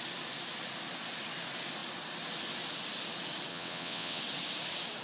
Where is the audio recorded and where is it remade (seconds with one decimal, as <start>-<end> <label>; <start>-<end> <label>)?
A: 0.0-3.5 recorded; 3.5-4.2 remade; 4.2-5.0 recorded